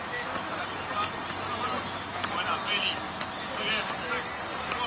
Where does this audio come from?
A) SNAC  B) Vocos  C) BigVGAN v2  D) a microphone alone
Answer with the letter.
D